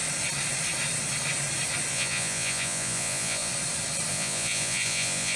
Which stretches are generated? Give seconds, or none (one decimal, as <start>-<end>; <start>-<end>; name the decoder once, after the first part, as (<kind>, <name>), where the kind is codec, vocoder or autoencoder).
1.9-3.5 (vocoder, Vocos); 4.1-5.4